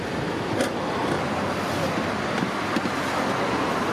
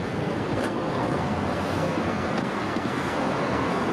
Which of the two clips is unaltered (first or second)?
first